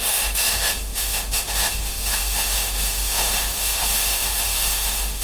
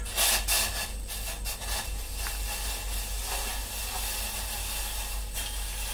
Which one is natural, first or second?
second